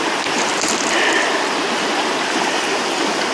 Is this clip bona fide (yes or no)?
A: yes